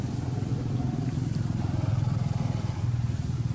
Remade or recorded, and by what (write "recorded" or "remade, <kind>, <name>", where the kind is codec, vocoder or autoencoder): recorded